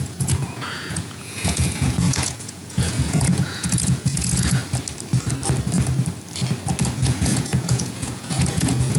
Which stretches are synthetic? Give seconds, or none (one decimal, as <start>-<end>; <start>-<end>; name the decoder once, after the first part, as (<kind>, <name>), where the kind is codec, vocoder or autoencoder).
0.0-4.6 (vocoder, Vocos); 7.0-9.0